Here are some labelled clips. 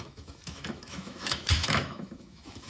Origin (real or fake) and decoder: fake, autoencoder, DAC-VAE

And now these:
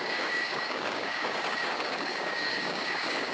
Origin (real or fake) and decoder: fake, codec, DAC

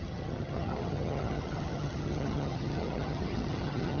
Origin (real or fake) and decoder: fake, vocoder, HiFi-GAN